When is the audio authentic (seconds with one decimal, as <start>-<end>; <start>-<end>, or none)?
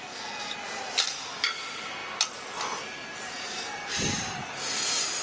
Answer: 0.0-5.2